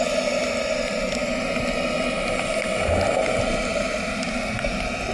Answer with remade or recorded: recorded